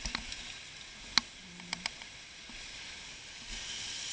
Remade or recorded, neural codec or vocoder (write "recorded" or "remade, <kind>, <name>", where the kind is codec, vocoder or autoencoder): recorded